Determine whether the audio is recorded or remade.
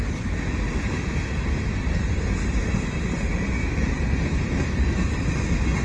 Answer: recorded